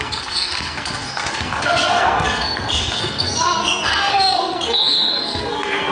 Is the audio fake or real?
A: fake